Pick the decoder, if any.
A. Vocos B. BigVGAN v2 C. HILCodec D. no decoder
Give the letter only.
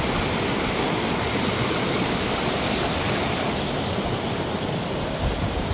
D